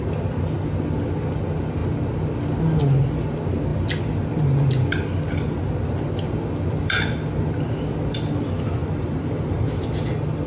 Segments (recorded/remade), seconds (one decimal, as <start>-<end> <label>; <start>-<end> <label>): 0.0-8.8 recorded; 8.8-9.8 remade; 9.8-10.5 recorded